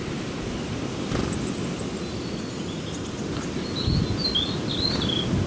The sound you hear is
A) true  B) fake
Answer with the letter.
A